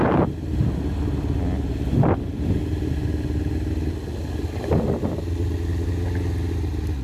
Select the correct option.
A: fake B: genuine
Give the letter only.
B